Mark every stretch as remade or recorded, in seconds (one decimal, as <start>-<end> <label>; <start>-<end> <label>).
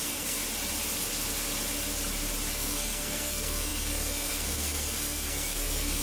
0.0-0.4 remade; 0.4-2.5 recorded; 2.5-6.0 remade